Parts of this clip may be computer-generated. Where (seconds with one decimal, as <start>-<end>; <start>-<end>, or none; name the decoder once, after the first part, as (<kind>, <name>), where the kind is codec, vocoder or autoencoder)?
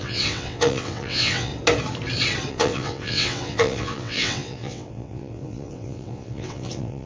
0.0-1.5 (vocoder, WaveNeXt); 2.5-7.1